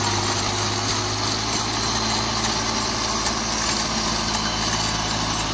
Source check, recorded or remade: recorded